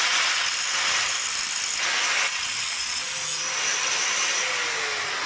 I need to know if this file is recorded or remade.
recorded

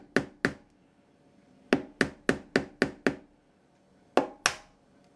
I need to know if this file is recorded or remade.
recorded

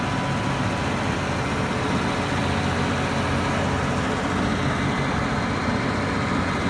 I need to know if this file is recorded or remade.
recorded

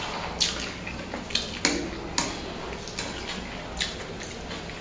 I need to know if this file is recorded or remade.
recorded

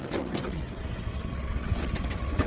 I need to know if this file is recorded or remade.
remade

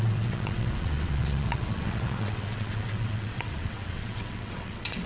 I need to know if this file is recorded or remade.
remade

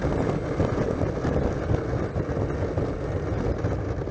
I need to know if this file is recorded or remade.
recorded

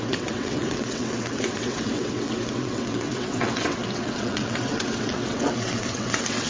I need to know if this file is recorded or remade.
remade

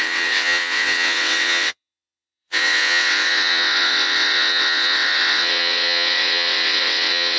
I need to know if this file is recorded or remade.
remade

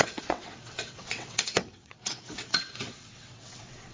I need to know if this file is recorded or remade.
remade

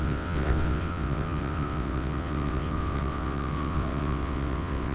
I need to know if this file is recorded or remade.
remade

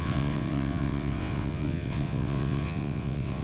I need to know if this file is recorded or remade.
remade